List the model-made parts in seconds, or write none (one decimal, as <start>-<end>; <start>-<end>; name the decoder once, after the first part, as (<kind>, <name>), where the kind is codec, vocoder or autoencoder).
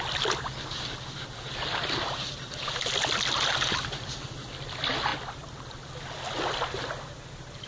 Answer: none